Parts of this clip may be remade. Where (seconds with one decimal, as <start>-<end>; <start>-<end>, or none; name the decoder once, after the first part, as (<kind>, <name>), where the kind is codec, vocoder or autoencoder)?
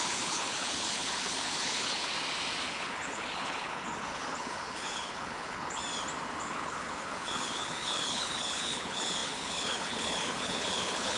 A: 0.0-2.1 (codec, HILCodec); 2.7-5.8; 6.4-11.2